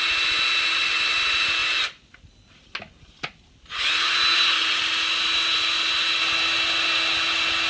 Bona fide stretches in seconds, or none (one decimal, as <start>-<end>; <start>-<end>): 0.0-7.7